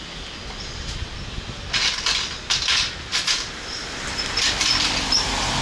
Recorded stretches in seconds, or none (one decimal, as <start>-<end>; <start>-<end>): 0.0-3.1; 4.4-5.6